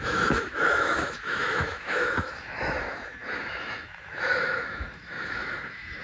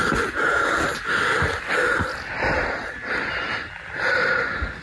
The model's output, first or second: first